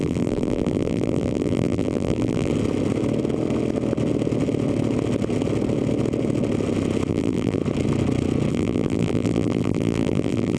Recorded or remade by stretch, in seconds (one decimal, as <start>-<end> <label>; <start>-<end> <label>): 0.0-2.5 remade; 2.5-7.1 recorded; 7.1-7.6 remade; 7.6-8.5 recorded; 8.5-10.6 remade